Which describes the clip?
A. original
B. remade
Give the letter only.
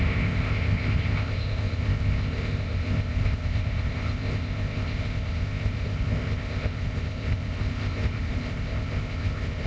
B